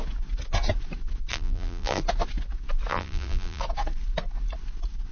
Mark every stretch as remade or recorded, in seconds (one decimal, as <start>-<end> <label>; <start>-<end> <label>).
0.0-1.3 recorded; 1.3-2.0 remade; 2.0-2.9 recorded; 2.9-3.6 remade; 3.6-5.1 recorded